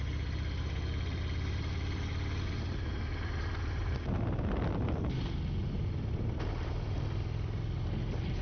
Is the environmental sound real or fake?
real